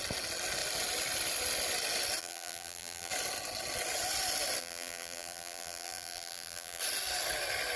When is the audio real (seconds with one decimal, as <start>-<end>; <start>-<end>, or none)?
0.0-2.2; 3.1-4.6; 6.8-7.8